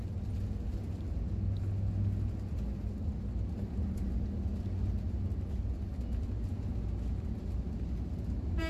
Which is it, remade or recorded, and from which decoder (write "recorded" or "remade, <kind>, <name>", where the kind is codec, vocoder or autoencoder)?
recorded